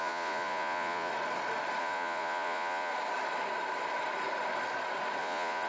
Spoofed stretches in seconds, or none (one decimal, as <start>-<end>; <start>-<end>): 0.0-1.1; 1.8-2.9; 5.2-5.7

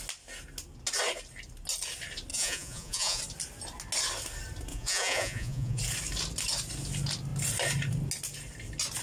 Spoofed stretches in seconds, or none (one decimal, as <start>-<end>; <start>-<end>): 2.3-3.2; 4.7-5.8

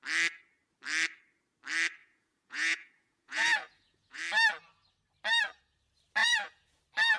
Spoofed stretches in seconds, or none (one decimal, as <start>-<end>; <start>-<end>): 2.0-4.2; 6.2-6.8

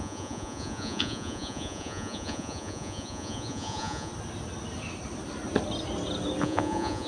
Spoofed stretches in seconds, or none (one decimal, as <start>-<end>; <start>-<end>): 0.0-4.1; 6.4-7.1

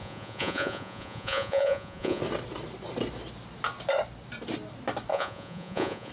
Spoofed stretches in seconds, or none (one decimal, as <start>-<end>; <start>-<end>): 0.0-2.2; 5.1-6.1

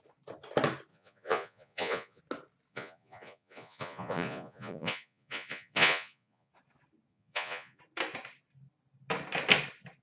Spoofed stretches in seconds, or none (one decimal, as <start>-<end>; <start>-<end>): 0.9-2.2; 2.7-6.5; 7.1-7.8

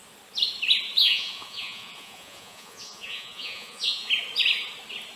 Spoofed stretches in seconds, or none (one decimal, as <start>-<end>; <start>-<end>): 1.0-4.1

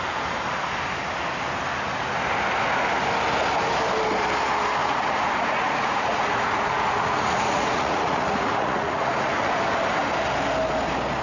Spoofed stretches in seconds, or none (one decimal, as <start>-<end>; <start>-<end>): 4.8-9.6